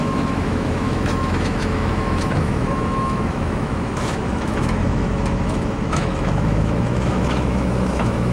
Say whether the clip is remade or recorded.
remade